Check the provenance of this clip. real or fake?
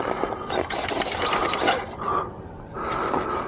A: real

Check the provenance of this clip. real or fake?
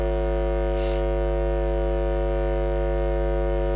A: fake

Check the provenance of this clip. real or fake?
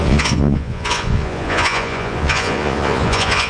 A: fake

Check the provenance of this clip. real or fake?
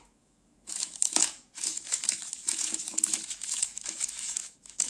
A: fake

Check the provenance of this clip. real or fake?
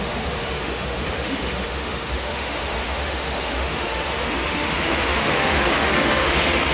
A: fake